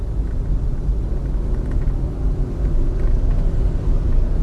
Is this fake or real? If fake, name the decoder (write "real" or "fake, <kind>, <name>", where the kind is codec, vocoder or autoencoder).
real